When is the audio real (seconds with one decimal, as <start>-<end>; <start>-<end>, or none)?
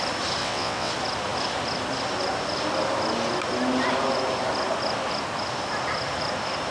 0.0-0.4; 0.9-6.7